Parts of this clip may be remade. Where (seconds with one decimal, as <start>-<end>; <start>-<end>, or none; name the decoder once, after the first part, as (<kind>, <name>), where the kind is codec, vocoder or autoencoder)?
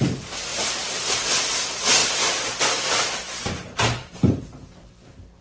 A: 0.5-1.4 (vocoder, BigVGAN v2); 2.0-4.9